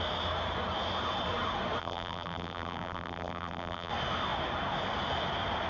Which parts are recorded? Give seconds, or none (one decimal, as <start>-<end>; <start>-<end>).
0.0-1.8; 3.9-5.7

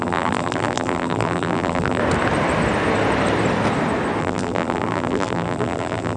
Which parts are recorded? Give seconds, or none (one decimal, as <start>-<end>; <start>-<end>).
2.0-4.2

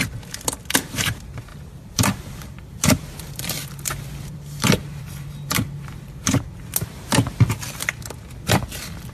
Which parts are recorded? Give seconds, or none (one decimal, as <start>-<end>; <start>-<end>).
0.0-1.5; 6.2-9.1